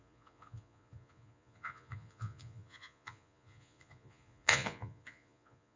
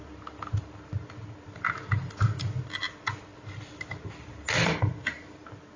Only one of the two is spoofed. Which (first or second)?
first